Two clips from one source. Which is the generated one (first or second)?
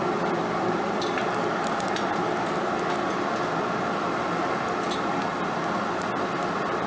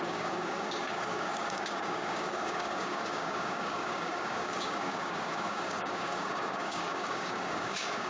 second